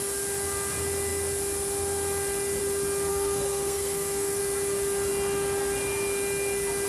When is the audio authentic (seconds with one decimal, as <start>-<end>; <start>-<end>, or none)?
0.0-3.1; 4.4-6.9